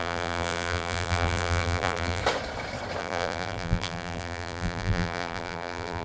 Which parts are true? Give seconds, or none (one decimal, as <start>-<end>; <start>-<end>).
2.2-3.0